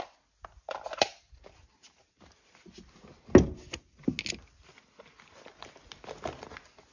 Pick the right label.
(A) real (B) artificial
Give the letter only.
A